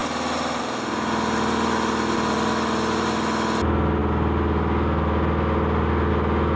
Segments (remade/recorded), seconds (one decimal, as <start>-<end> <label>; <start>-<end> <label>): 0.0-6.6 recorded